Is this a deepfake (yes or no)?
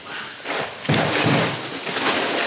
no